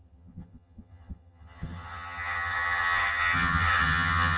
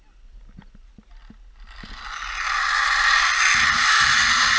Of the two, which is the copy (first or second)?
first